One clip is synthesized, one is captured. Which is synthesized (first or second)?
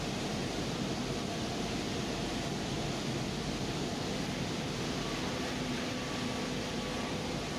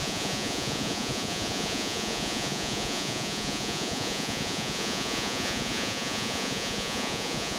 second